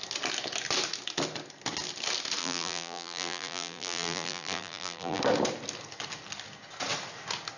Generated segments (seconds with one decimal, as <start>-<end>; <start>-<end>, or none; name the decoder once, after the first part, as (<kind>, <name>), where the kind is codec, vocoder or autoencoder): 2.4-5.2 (vocoder, BigVGAN v2)